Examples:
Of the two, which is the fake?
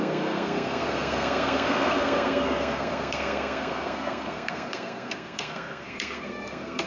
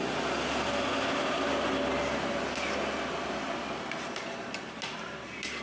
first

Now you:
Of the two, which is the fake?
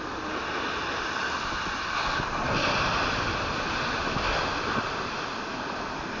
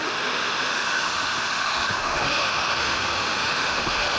second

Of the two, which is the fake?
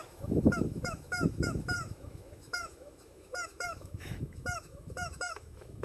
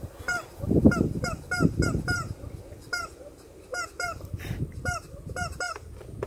first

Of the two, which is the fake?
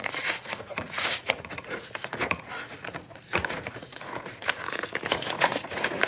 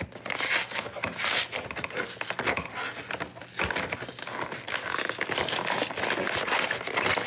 first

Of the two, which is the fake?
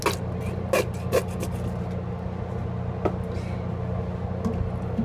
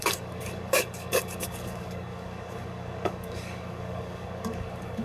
second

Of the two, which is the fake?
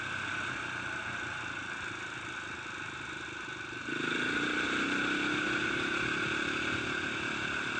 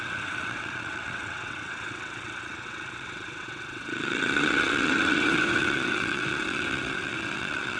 second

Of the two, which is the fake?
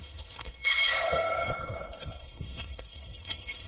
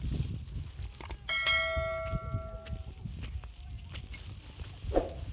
first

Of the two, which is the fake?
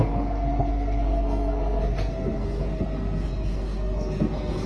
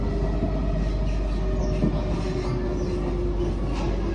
first